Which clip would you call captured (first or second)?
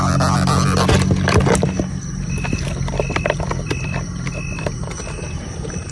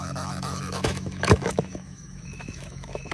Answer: first